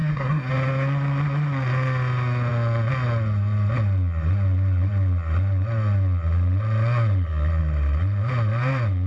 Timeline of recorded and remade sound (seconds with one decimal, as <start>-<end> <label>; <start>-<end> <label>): 0.0-0.5 remade; 0.5-9.1 recorded